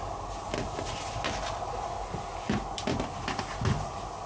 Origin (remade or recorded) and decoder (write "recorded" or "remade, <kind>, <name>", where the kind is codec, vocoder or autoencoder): recorded